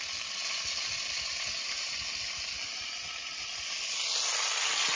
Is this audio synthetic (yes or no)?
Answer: no